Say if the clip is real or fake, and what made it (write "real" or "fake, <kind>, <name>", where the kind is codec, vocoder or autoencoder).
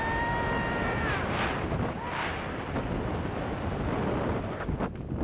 real